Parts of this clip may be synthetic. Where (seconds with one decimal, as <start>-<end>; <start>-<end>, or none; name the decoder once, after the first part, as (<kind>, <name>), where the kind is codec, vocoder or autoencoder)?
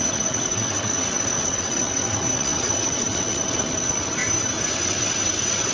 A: 0.0-4.2 (vocoder, WaveNeXt); 4.7-5.7